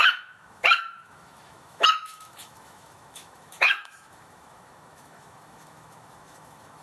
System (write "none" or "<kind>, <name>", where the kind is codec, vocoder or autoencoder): autoencoder, DAC-VAE